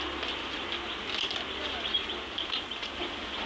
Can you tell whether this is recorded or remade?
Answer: recorded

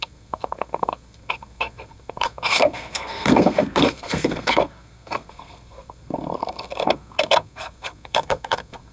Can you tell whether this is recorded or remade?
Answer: remade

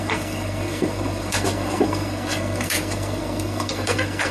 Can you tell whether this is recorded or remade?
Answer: remade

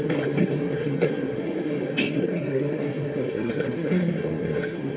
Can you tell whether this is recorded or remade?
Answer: remade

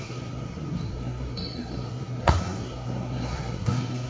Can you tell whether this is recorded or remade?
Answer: remade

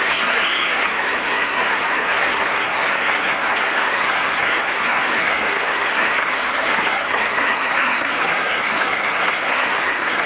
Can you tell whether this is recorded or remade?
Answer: remade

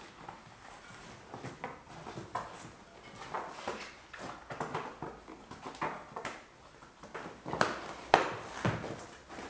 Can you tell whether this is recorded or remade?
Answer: recorded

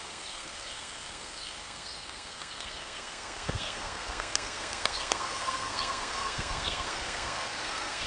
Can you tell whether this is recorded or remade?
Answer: remade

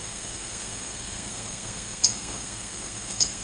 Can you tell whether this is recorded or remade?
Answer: remade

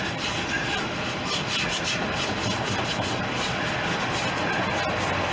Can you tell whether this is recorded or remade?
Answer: recorded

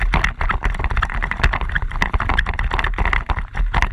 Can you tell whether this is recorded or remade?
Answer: recorded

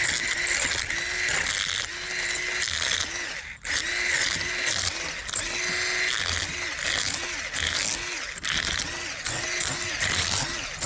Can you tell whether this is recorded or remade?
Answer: recorded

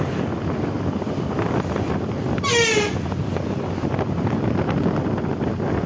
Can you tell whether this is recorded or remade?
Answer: recorded